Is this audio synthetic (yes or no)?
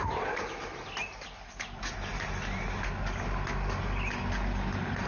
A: no